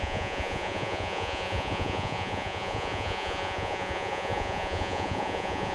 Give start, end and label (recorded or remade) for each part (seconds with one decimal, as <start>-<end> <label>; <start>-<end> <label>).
0.0-5.7 remade